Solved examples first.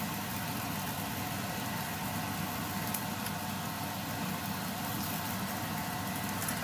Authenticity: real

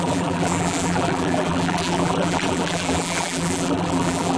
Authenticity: fake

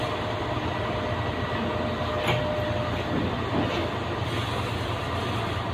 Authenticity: real